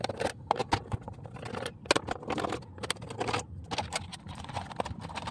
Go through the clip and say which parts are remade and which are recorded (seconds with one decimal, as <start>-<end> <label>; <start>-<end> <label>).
0.0-4.1 recorded; 4.1-4.7 remade; 4.7-5.3 recorded